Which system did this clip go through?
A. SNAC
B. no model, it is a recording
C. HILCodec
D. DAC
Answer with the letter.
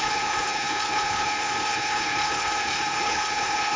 C